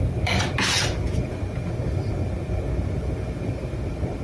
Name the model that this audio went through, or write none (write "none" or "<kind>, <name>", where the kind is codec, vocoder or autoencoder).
none